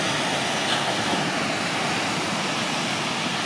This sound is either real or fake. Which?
real